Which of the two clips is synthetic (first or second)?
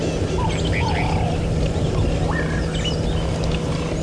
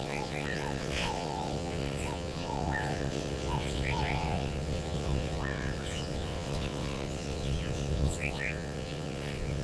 second